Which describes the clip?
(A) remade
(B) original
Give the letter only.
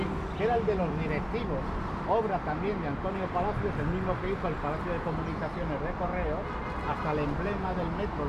B